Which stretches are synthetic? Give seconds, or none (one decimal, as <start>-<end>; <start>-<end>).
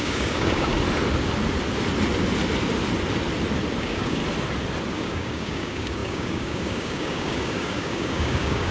0.0-0.7; 3.8-4.2; 4.9-8.7